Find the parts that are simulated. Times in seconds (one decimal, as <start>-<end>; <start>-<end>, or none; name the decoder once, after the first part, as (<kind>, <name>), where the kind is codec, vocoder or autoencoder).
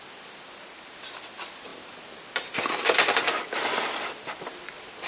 none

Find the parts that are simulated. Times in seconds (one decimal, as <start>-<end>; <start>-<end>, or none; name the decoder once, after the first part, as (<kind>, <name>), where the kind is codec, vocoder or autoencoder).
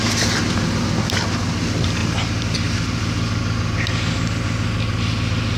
none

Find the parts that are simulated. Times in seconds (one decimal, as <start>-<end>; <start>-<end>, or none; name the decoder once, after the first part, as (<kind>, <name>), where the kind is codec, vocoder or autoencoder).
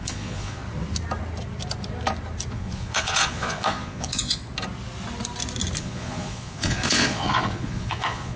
0.0-0.6 (vocoder, Vocos); 2.5-4.4; 5.8-8.4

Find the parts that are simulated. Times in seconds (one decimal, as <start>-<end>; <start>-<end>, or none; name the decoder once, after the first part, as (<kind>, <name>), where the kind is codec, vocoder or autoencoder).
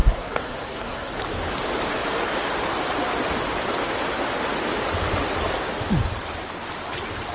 0.0-1.1 (codec, SNAC)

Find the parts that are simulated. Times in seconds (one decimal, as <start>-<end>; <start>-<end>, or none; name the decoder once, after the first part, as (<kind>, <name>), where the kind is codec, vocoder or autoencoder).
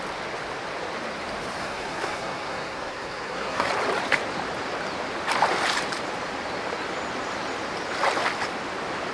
1.6-3.7 (codec, SNAC)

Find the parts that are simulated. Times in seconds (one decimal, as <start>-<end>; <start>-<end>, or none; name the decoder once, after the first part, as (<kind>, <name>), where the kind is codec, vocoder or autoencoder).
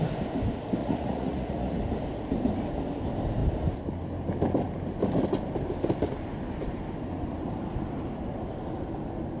0.8-1.8 (vocoder, Vocos)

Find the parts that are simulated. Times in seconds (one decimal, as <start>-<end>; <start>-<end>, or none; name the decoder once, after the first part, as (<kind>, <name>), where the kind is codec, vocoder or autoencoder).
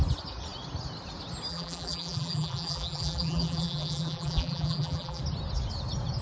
1.5-5.2 (vocoder, BigVGAN v2)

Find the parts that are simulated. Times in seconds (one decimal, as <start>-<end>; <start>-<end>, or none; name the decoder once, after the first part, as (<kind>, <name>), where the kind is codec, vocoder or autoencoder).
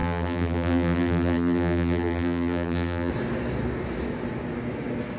0.0-3.1 (vocoder, BigVGAN v2)